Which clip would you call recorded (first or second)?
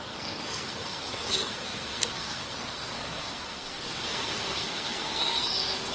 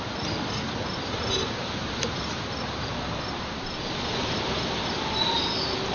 second